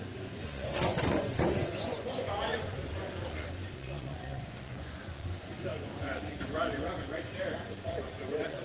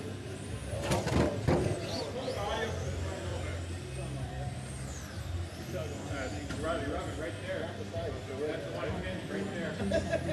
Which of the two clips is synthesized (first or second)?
first